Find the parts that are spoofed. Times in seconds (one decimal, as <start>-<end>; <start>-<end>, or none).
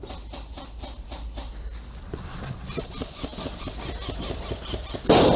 none